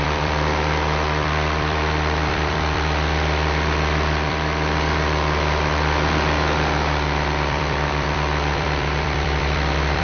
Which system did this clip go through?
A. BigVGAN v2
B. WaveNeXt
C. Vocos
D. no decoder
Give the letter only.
A